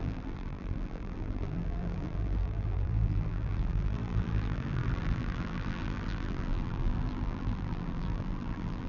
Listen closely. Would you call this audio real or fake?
fake